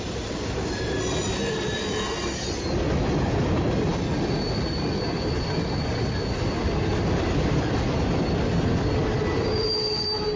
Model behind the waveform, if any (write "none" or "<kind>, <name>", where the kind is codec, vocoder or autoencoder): none